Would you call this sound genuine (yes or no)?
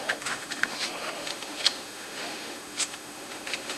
no